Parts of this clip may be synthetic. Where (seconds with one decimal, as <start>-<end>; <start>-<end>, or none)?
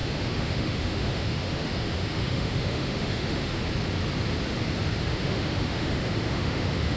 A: 0.0-3.6; 4.9-7.0